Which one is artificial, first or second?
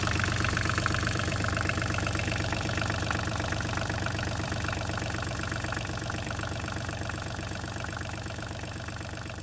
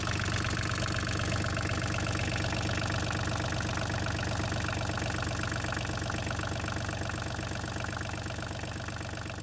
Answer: first